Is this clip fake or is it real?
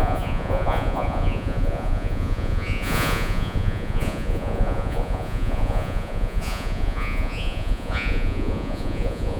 fake